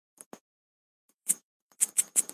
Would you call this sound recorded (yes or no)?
no